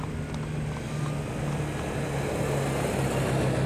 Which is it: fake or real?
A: real